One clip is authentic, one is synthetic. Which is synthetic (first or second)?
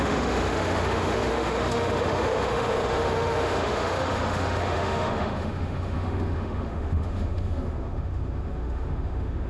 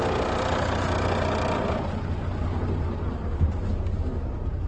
first